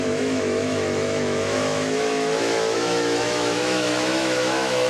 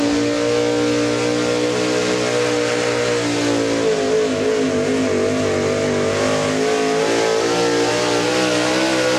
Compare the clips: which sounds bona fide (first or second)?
second